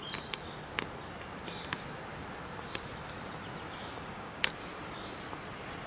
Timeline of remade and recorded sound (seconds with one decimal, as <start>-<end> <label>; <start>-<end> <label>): 0.0-3.8 recorded; 3.8-4.4 remade; 4.4-5.9 recorded